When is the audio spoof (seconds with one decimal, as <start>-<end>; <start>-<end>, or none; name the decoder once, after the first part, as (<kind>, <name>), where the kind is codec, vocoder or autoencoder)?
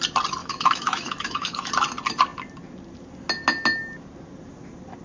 0.4-1.7 (autoencoder, DAC-VAE)